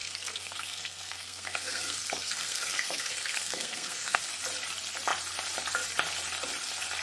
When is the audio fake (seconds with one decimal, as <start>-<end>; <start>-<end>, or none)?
0.0-4.2